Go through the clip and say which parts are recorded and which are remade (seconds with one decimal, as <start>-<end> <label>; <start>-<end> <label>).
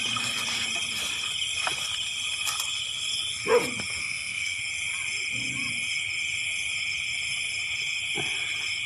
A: 0.0-4.0 recorded; 4.0-4.6 remade; 4.6-8.9 recorded